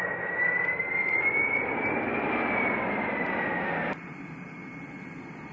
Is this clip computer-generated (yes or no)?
no